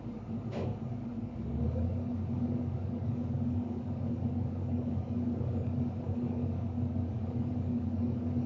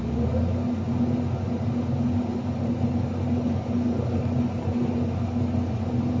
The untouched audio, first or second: second